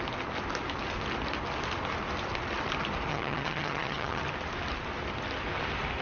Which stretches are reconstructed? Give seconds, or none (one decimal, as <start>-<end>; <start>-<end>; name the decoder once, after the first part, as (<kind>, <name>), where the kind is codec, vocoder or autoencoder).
3.1-4.2 (vocoder, HiFi-GAN)